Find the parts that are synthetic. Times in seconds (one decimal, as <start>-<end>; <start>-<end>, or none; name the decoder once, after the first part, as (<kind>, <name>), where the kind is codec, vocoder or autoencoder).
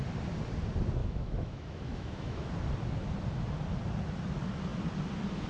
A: 1.0-2.5 (autoencoder, DAC-VAE)